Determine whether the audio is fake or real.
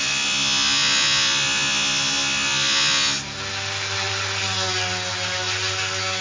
real